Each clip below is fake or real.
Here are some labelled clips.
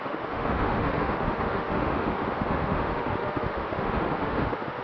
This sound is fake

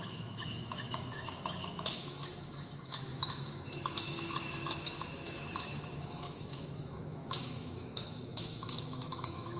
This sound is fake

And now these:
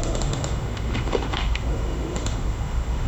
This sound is fake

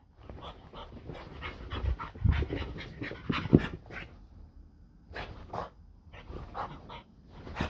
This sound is real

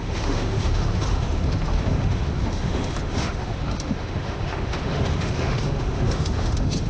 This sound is fake